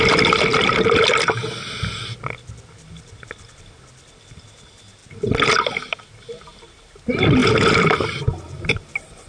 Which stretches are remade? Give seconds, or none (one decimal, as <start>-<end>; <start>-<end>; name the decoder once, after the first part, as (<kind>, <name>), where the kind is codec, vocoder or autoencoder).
none